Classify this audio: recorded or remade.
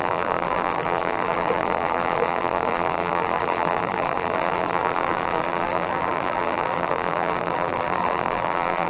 remade